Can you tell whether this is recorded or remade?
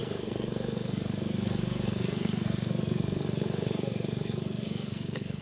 remade